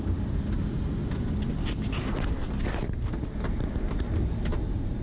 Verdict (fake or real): real